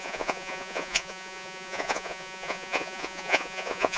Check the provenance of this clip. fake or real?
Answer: fake